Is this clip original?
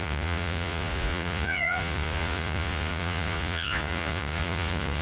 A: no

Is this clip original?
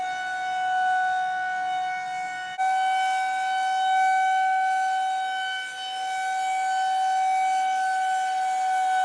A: yes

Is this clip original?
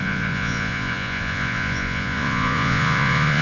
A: no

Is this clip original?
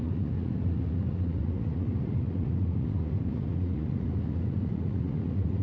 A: no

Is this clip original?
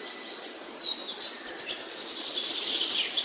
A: yes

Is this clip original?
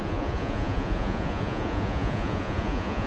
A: no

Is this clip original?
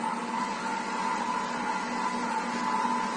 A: yes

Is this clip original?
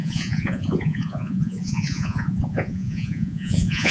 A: no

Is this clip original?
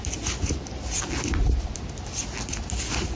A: yes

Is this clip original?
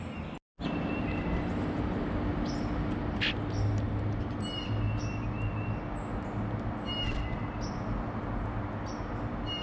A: yes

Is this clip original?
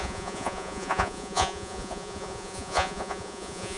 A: no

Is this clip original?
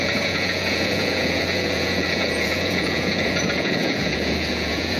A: no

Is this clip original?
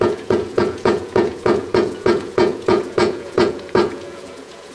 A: no